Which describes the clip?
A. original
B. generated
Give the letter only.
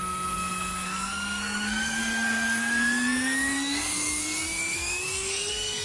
B